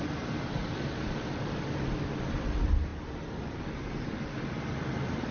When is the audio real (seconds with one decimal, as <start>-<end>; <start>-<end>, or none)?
0.0-5.3